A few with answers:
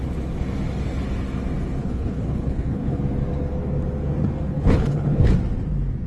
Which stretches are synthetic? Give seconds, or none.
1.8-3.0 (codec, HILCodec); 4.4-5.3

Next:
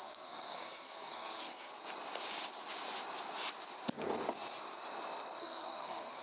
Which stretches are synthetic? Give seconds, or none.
0.0-1.7 (codec, SNAC); 5.4-6.2

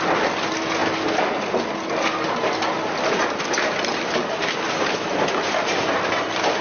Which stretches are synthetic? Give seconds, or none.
none

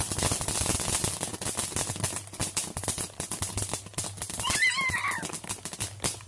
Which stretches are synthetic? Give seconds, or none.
none

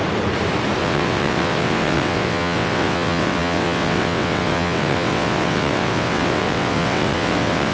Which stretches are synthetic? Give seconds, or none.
0.8-7.7 (vocoder, WaveNeXt)